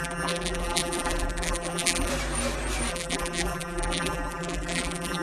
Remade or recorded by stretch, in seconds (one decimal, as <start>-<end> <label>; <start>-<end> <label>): 0.0-2.1 remade; 2.1-2.9 recorded; 2.9-5.2 remade